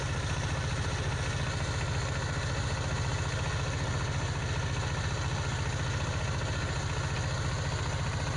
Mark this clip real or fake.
real